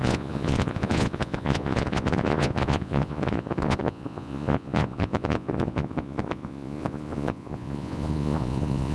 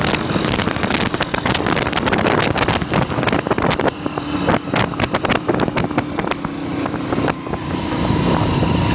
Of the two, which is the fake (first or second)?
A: first